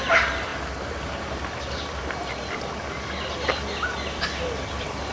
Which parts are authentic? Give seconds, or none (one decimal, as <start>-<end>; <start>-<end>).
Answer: 0.0-5.1